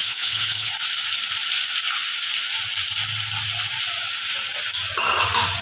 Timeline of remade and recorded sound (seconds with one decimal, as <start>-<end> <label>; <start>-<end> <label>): 0.0-0.7 remade; 0.7-5.6 recorded